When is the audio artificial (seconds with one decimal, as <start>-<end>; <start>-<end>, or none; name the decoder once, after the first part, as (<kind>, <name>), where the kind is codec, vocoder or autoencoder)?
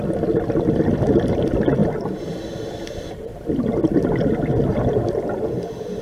1.8-5.4 (vocoder, BigVGAN v2)